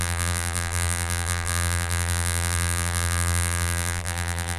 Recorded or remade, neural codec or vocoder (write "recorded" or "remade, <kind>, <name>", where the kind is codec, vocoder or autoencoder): remade, vocoder, BigVGAN v2